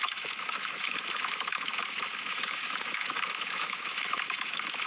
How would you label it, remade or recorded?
remade